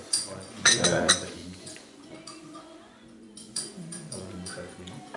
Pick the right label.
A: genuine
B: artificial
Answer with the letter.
B